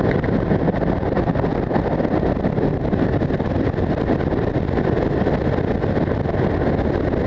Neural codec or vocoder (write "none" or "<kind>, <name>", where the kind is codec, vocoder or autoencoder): none